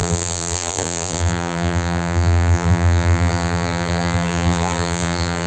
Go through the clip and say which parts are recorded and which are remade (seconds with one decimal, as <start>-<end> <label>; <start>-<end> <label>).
0.0-5.5 remade